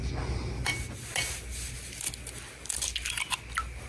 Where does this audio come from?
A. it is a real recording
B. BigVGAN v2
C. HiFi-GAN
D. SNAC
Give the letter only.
A